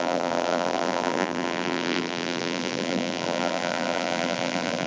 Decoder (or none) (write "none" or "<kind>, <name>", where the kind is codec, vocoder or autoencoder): vocoder, BigVGAN v2